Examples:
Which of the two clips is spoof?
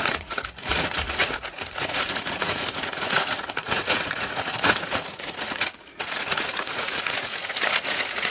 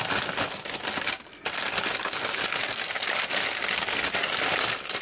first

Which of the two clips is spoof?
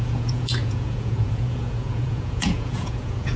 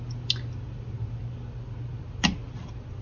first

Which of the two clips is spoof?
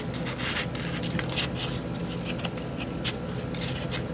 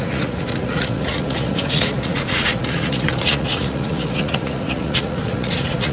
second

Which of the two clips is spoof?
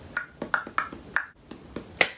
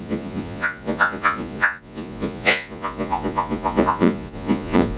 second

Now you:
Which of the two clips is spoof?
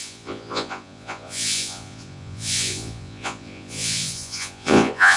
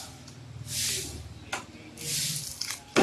first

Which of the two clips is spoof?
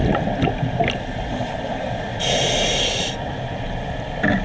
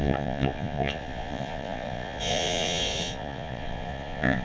second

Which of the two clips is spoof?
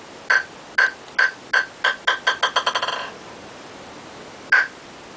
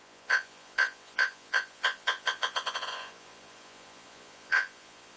second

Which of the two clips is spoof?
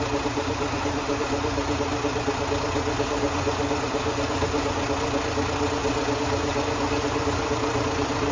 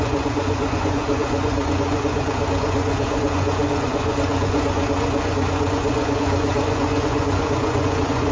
second